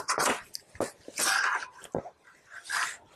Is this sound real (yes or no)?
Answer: yes